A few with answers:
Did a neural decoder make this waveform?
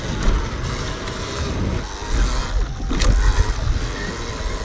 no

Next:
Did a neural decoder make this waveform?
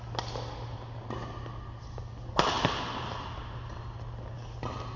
no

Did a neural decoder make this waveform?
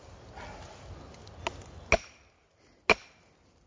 no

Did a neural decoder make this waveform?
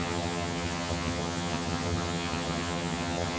yes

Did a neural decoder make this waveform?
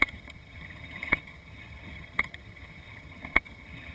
yes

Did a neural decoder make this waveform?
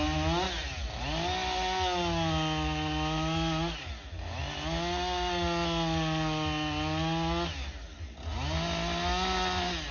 no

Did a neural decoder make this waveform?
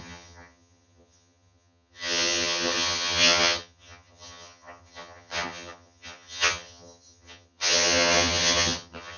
yes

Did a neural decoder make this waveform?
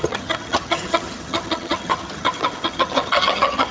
yes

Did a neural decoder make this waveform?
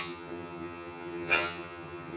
yes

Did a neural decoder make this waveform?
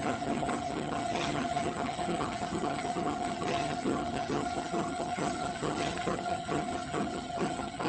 yes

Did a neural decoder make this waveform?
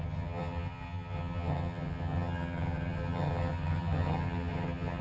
yes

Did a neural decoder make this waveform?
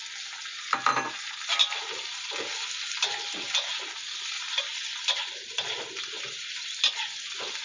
no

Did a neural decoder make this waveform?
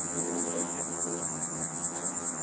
yes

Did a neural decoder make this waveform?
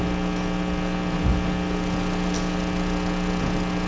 no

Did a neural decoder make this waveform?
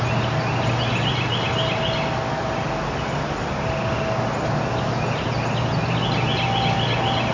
no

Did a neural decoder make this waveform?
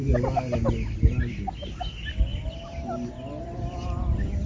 no